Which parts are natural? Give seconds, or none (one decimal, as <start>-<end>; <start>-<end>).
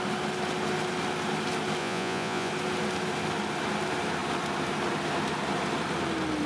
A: 0.0-1.8; 2.5-6.5